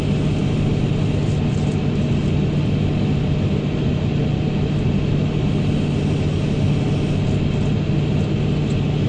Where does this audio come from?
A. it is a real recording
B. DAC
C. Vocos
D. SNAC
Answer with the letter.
A